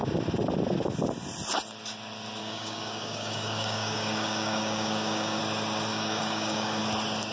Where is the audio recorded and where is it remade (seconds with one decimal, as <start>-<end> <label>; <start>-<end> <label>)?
0.0-2.4 recorded; 2.4-5.4 remade; 5.4-5.9 recorded; 5.9-6.8 remade; 6.8-7.3 recorded